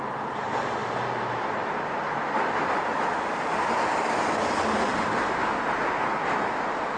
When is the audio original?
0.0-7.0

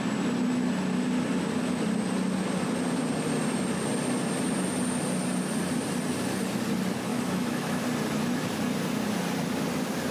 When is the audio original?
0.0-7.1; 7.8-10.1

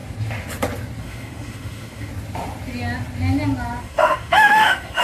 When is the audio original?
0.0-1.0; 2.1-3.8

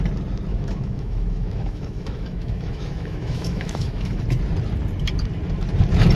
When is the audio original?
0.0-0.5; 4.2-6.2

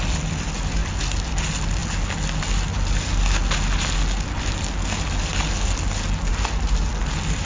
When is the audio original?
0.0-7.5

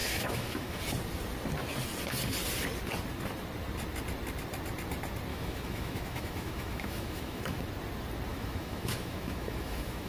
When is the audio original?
0.8-5.3; 7.6-8.3

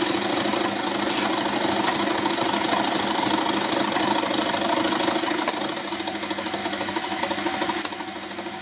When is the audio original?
0.0-6.6; 7.2-8.6

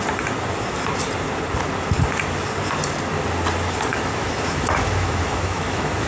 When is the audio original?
0.0-3.9